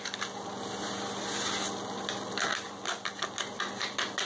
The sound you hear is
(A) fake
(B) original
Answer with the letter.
B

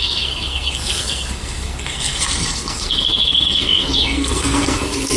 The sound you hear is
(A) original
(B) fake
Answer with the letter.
B